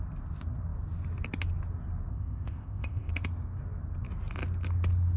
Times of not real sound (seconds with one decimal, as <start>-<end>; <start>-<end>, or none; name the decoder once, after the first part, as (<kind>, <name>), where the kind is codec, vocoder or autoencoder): 2.1-3.1 (codec, ZipCodec)